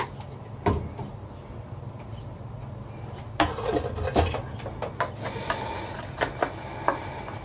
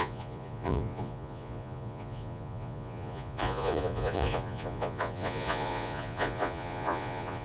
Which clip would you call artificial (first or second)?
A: second